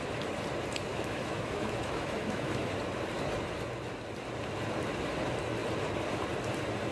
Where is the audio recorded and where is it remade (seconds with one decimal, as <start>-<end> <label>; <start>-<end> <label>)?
0.0-0.9 recorded; 0.9-2.7 remade; 2.7-6.9 recorded